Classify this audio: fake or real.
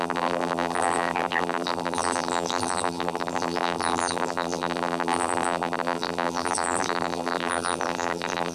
fake